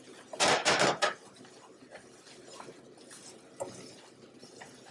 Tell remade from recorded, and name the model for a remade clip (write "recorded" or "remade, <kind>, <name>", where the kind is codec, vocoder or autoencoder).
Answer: recorded